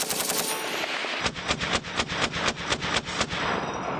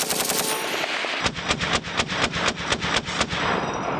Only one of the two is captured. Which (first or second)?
first